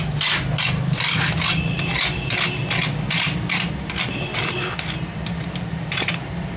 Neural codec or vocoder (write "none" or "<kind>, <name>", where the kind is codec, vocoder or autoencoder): vocoder, BigVGAN v2